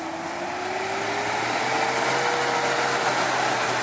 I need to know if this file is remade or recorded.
recorded